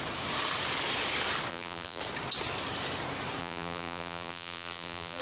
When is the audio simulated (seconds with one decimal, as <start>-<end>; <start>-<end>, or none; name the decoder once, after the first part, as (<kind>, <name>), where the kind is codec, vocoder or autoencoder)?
1.5-2.0 (vocoder, BigVGAN v2); 3.4-5.2